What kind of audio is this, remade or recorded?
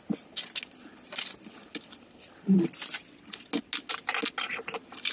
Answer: recorded